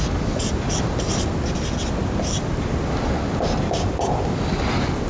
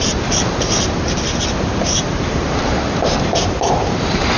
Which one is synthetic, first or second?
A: second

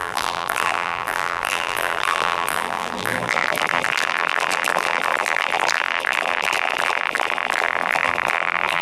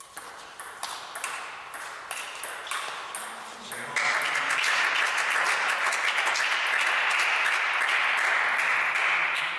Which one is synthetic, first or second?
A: first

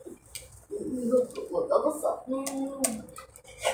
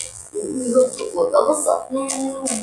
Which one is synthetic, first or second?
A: second